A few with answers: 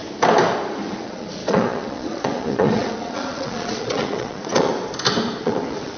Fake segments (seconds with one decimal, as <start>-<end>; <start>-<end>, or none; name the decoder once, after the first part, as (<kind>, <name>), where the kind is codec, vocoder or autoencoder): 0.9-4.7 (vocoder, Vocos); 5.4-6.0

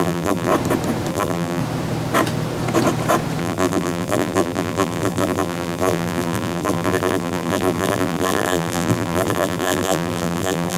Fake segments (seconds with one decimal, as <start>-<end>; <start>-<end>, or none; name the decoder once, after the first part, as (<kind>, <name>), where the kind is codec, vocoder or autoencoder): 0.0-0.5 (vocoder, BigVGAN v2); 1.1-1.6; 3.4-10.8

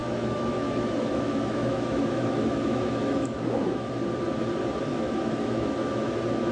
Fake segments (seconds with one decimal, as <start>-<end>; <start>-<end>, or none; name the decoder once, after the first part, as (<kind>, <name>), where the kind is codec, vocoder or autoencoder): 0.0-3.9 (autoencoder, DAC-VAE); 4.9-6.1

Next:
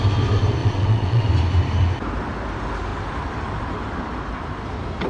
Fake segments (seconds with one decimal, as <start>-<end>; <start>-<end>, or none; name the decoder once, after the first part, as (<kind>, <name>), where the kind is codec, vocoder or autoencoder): 0.6-1.3 (vocoder, WaveNeXt)

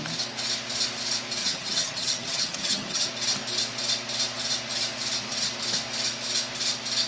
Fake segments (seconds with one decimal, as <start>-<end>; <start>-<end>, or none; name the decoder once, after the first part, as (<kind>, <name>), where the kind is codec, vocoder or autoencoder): 1.4-3.1 (vocoder, HiFi-GAN)

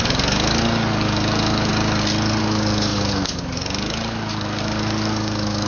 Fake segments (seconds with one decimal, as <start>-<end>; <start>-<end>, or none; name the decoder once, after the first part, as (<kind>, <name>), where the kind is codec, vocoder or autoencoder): 0.0-1.7 (codec, DAC); 2.4-5.7

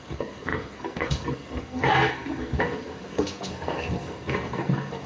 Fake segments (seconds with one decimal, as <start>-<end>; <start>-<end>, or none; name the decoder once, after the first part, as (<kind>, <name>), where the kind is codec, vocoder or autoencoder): 0.0-5.1 (codec, SNAC)

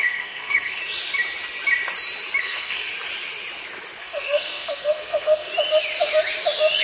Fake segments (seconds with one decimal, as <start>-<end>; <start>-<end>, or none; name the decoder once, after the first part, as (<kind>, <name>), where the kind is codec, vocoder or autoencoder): 0.0-0.8 (codec, SNAC); 2.4-2.9; 4.0-5.5